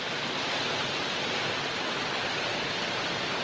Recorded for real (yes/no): yes